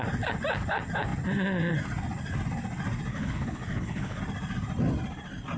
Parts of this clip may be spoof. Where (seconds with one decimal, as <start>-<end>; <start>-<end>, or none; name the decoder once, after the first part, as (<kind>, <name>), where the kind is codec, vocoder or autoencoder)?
3.1-4.2 (codec, HILCodec)